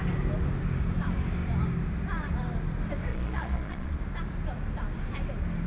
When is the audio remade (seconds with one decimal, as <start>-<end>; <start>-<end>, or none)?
3.1-4.0